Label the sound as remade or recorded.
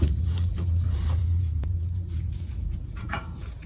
remade